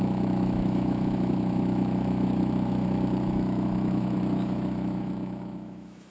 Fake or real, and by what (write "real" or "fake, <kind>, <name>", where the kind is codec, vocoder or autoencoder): fake, autoencoder, DAC-VAE